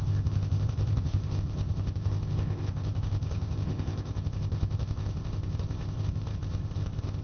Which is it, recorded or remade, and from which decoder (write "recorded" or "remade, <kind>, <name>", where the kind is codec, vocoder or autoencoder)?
remade, codec, ZipCodec